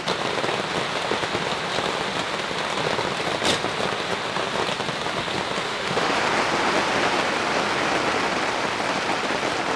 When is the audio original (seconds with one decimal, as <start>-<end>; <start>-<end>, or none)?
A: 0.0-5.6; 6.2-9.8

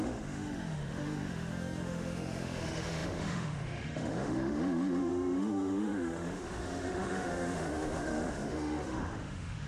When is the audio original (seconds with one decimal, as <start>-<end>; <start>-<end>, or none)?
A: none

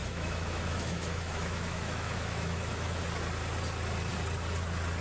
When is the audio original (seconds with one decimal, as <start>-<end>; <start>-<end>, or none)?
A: 3.0-5.0

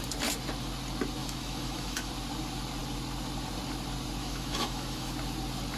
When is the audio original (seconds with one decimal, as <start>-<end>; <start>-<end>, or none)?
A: 0.0-1.2; 2.1-4.2; 5.1-5.8

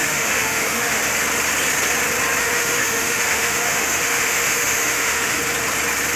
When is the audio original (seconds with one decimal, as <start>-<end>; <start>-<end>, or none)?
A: 1.0-2.4; 5.4-6.2

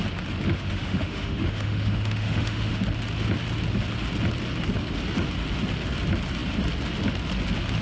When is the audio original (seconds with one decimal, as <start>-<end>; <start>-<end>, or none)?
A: 0.0-0.5; 2.8-7.8

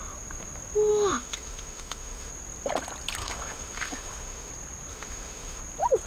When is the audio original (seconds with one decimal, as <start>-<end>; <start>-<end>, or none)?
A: 0.0-0.9; 2.3-3.2; 4.5-4.9; 5.6-6.1